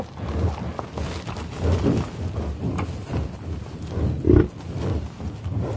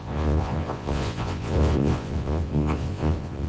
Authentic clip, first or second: first